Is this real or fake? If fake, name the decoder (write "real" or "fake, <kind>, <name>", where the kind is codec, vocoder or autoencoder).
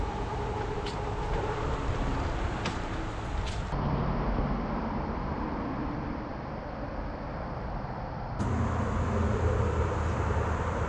fake, vocoder, BigVGAN v2